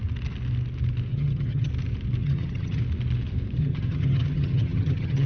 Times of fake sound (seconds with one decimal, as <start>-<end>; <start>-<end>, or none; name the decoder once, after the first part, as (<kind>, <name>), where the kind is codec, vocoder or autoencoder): 1.1-1.7 (vocoder, HiFi-GAN); 2.2-2.8; 3.6-5.3